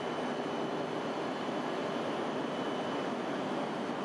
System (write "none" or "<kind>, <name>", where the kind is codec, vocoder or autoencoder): none